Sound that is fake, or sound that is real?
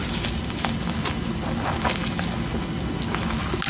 real